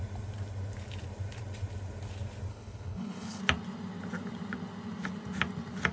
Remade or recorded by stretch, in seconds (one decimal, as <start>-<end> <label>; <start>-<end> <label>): 0.0-2.5 recorded; 2.5-3.4 remade; 3.4-5.9 recorded